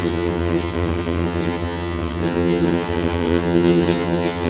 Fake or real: fake